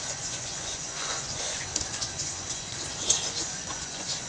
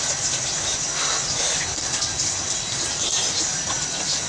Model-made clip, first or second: first